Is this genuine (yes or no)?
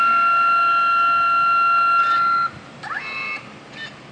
yes